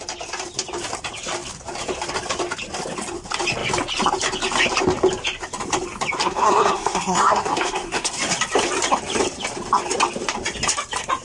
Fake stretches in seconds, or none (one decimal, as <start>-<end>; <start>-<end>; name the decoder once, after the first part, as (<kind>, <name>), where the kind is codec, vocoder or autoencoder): 6.2-8.1 (codec, SNAC)